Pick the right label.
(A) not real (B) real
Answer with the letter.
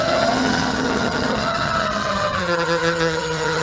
A